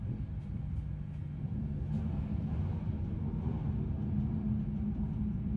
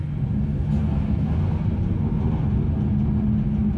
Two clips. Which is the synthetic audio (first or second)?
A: first